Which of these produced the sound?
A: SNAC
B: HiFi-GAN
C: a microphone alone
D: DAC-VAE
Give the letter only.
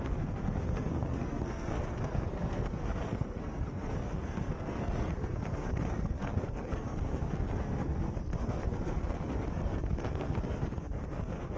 A